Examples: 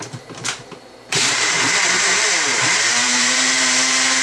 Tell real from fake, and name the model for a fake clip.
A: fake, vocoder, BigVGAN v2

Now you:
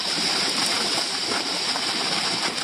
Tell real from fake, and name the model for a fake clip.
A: real